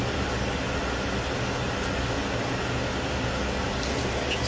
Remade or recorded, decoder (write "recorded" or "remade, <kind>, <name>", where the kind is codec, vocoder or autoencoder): recorded